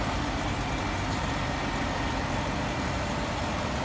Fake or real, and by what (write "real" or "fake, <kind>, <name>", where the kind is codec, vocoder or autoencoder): real